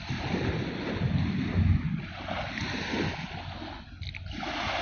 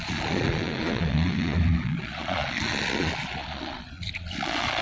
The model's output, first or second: second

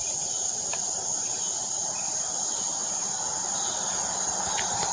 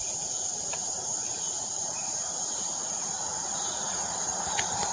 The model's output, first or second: second